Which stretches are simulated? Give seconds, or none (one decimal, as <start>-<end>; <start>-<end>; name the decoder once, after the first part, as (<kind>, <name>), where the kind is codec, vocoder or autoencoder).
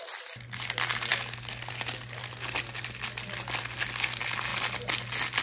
none